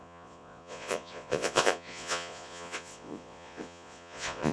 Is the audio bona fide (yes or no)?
no